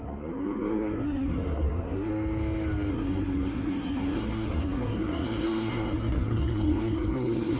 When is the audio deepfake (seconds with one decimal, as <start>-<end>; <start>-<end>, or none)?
0.0-2.1; 2.9-7.6